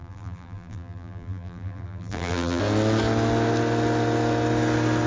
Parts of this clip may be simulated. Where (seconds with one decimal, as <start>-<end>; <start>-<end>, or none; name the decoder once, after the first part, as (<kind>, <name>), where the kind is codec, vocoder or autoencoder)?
0.0-2.6 (vocoder, BigVGAN v2)